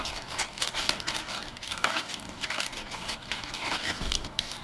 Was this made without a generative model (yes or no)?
no